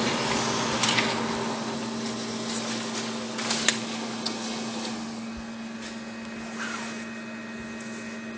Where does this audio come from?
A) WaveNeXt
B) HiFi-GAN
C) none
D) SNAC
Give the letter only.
C